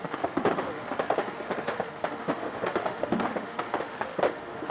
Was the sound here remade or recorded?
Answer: remade